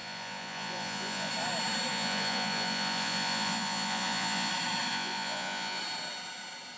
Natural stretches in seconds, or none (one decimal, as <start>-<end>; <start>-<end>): 1.3-1.9; 4.5-4.9; 5.8-6.8